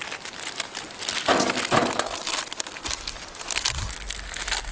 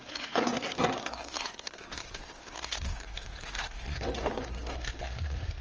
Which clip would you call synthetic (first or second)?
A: second